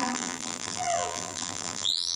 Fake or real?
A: fake